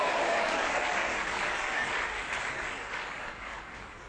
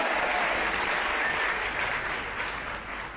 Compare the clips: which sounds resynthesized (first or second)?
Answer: first